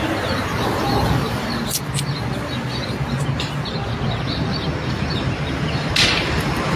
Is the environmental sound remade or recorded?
recorded